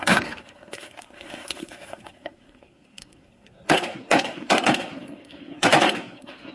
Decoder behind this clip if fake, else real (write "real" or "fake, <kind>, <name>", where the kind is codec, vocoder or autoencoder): fake, codec, SNAC